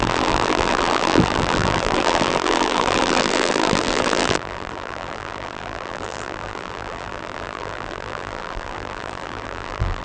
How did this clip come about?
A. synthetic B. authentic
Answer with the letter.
A